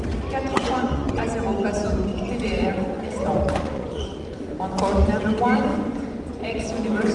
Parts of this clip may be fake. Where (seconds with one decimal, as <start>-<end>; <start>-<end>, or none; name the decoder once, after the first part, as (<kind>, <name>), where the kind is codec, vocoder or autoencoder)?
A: 0.6-1.3 (vocoder, Vocos); 2.1-4.5; 5.7-7.1